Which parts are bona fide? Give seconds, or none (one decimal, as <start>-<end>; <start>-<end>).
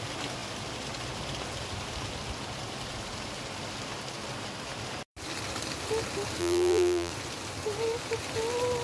0.0-6.4; 7.1-8.8